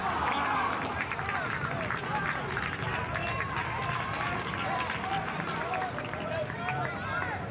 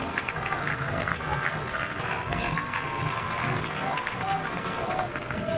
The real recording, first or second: first